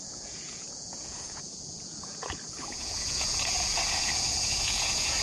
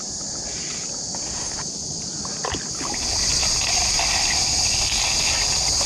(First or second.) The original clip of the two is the second